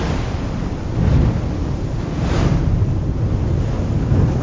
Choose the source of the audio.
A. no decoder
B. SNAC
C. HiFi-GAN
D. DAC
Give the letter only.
A